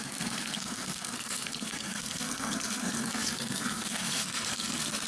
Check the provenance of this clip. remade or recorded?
remade